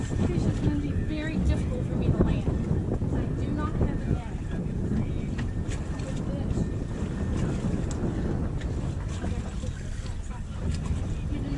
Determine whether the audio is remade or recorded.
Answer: recorded